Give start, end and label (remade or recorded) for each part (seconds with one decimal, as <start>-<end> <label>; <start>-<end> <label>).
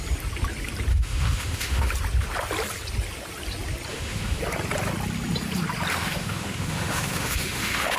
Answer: 0.0-0.9 recorded; 0.9-1.9 remade; 1.9-3.9 recorded; 3.9-4.4 remade; 4.4-5.9 recorded; 5.9-8.0 remade